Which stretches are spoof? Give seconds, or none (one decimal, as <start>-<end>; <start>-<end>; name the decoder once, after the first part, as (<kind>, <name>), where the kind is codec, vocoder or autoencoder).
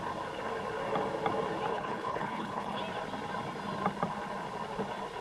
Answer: 1.7-2.8 (codec, HILCodec)